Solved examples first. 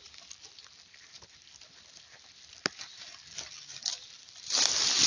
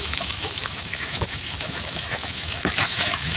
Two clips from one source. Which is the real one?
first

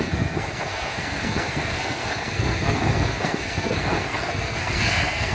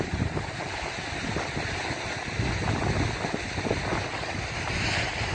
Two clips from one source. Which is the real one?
second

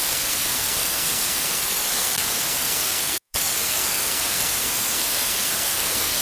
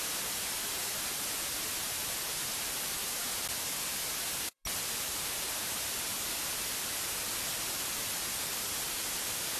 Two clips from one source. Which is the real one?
second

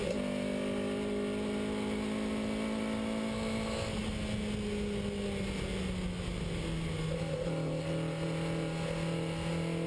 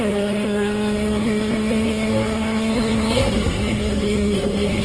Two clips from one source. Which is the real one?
first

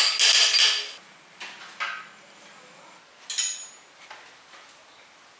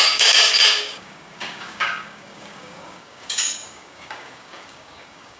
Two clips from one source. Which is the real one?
first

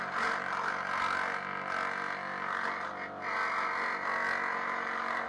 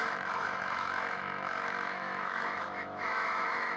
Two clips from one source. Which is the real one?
first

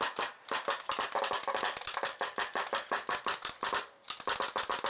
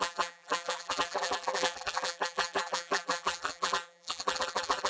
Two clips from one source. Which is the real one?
first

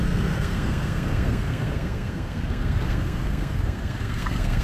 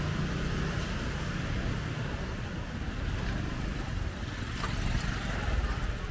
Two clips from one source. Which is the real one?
second